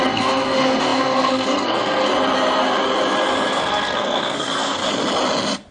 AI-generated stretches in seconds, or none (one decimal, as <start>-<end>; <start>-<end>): 0.0-2.1; 3.5-4.8